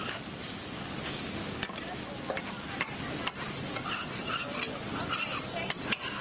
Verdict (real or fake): real